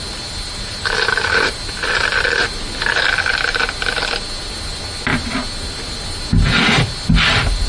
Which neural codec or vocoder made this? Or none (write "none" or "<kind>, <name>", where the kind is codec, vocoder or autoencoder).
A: vocoder, BigVGAN v2